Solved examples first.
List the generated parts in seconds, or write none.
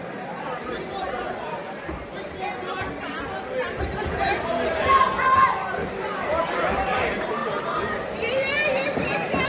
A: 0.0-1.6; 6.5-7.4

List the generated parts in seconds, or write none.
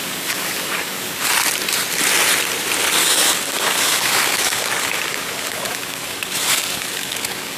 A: 0.0-1.3; 3.0-7.6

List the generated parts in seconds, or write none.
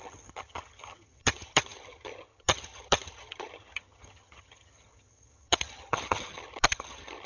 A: 0.0-7.3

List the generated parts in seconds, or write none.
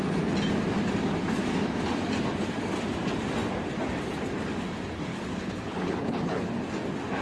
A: 5.1-6.5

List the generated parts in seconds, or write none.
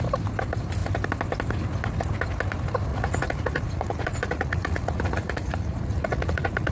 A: 2.9-6.7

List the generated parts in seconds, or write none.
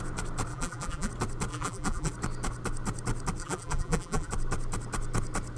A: 0.5-1.1; 1.5-2.1; 3.4-4.3